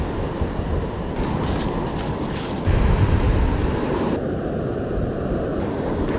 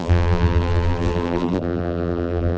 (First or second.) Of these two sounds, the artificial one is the second